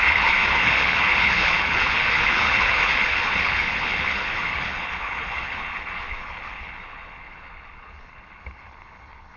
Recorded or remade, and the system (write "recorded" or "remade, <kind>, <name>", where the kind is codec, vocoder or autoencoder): remade, codec, HILCodec